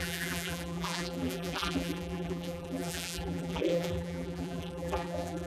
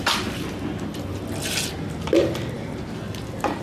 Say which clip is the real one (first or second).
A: second